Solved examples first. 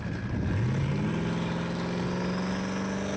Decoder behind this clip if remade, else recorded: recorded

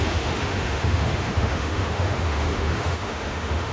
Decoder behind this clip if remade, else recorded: remade, autoencoder, DAC-VAE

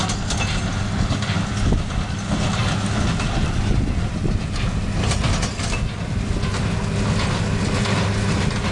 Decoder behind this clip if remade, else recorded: recorded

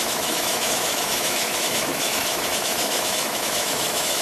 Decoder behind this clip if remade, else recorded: remade, autoencoder, DAC-VAE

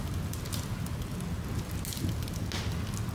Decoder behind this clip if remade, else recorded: recorded